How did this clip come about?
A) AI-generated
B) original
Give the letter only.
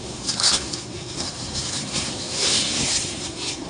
A